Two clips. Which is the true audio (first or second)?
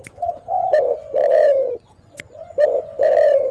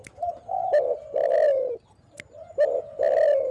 second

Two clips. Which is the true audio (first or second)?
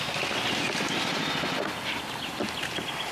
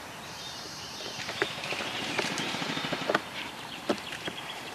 first